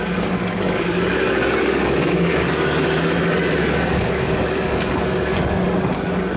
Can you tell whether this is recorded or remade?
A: remade